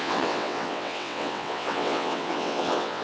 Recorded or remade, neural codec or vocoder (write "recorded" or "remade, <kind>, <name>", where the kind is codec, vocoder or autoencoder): remade, vocoder, WaveNeXt